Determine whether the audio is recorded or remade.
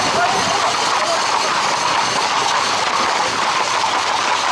recorded